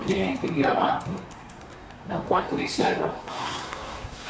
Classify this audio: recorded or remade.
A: remade